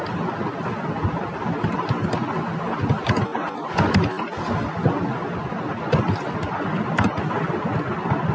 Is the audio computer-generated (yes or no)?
no